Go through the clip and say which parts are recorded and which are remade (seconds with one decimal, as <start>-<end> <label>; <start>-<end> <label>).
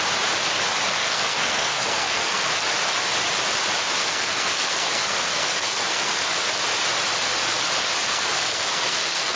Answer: 0.0-0.9 recorded; 0.9-2.5 remade; 2.5-4.0 recorded; 4.0-6.2 remade; 6.2-8.1 recorded; 8.1-9.4 remade